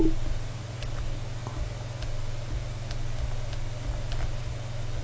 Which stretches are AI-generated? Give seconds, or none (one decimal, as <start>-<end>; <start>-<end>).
none